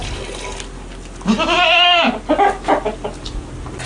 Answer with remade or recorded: recorded